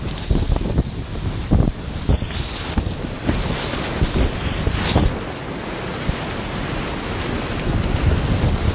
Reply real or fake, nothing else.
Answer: real